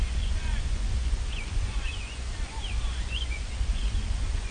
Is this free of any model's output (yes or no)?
no